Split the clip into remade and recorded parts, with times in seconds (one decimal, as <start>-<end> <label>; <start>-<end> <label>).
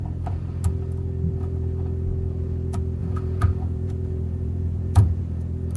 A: 0.0-3.0 recorded; 3.0-5.2 remade; 5.2-5.8 recorded